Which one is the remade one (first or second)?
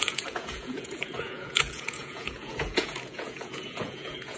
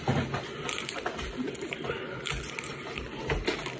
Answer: first